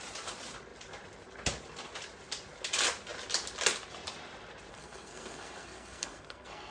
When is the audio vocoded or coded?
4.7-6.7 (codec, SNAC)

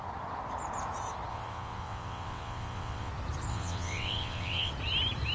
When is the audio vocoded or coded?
1.3-3.1 (vocoder, WaveNeXt); 3.5-4.7

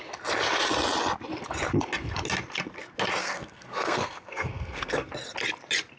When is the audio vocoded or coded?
3.2-5.1 (codec, SNAC)

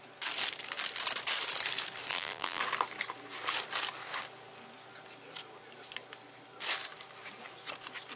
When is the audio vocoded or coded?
2.1-2.6 (vocoder, BigVGAN v2)

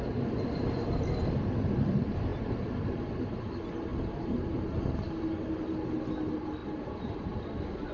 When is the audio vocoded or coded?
3.9-5.2 (vocoder, BigVGAN v2); 6.6-7.3

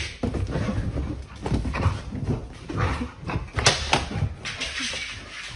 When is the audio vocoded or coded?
none

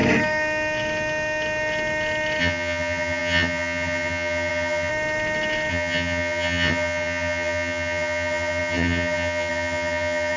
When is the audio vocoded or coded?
2.4-4.9 (vocoder, HiFi-GAN); 5.7-10.4

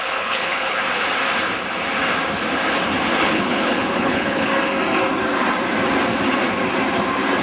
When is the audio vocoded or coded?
0.0-0.8 (codec, HILCodec); 3.2-4.5